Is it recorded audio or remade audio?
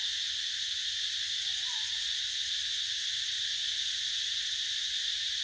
recorded